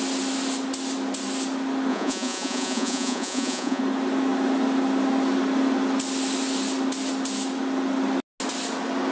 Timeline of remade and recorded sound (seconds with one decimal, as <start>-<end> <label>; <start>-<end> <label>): 0.0-1.9 recorded; 1.9-3.8 remade; 3.8-9.1 recorded